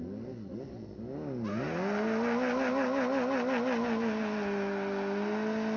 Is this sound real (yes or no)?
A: yes